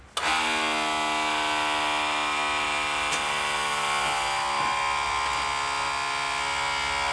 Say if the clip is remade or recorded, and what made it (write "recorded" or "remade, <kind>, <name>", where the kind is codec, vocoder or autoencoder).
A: recorded